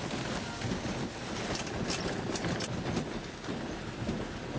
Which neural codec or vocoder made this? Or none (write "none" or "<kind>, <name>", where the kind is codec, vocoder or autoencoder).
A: none